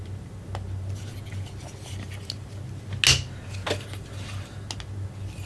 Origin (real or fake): real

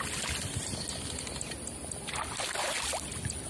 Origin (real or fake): real